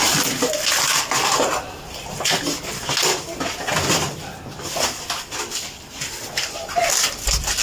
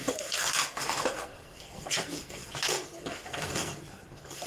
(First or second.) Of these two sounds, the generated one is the second